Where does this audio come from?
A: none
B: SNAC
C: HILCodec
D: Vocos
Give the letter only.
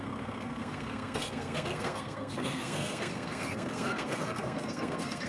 B